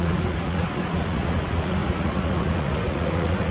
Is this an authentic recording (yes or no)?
no